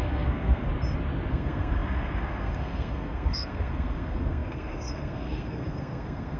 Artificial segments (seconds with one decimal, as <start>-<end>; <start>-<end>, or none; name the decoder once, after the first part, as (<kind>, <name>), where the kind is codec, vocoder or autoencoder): 0.0-0.7 (codec, SNAC); 1.3-6.4

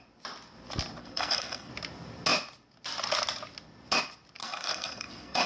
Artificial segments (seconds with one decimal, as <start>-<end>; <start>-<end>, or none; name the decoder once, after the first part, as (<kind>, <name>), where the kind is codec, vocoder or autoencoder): 1.0-1.7 (codec, SNAC); 4.4-5.5

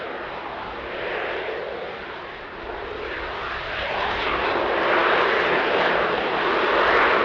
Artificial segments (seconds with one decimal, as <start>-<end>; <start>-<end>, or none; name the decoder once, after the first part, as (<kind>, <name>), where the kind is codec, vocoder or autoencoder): none

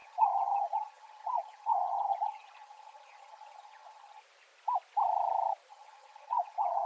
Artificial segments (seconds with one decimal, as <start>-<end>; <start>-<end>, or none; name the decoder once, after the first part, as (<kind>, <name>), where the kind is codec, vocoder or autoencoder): 0.0-4.2 (vocoder, HiFi-GAN); 5.7-6.9

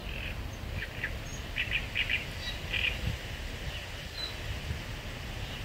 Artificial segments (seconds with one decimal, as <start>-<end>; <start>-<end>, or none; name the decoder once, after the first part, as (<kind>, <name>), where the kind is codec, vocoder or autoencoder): none

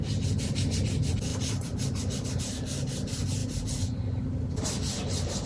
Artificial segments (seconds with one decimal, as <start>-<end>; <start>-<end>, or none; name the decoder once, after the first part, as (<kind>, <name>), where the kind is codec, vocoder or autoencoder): none

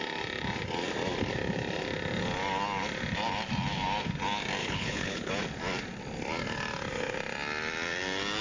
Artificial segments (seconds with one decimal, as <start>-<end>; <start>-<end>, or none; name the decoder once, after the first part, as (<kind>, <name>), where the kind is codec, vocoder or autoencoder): 4.6-5.3 (codec, HILCodec)